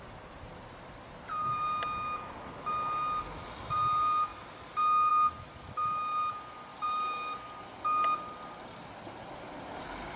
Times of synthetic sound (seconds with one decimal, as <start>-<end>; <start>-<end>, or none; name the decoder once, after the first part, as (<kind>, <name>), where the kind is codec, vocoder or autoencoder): 6.7-7.3 (vocoder, BigVGAN v2)